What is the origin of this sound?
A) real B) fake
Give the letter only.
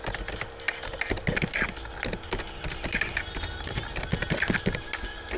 A